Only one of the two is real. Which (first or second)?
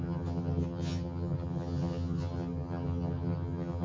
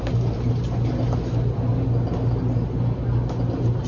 second